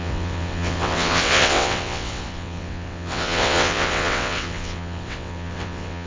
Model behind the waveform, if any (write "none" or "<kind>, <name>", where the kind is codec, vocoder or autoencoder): vocoder, WaveNeXt